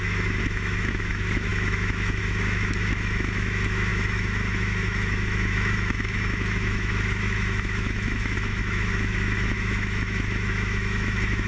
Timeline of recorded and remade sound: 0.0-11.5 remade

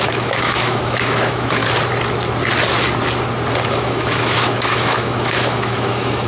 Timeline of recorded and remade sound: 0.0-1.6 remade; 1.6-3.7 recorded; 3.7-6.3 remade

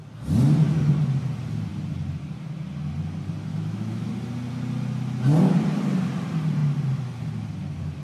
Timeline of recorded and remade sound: 0.0-3.5 recorded; 3.5-4.1 remade; 4.1-8.0 recorded

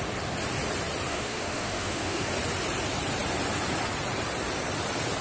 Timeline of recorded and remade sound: 0.0-1.1 recorded; 1.1-2.3 remade; 2.3-5.2 recorded